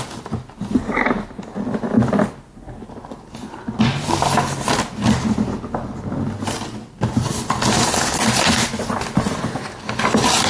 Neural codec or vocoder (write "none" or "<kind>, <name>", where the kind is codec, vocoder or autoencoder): none